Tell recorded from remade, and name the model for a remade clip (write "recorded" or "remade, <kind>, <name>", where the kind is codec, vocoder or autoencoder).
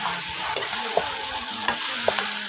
recorded